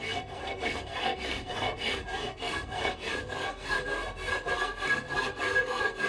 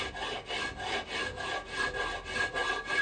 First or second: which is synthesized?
first